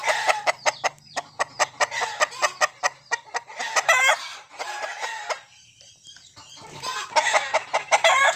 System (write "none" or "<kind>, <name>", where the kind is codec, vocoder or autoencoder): vocoder, BigVGAN v2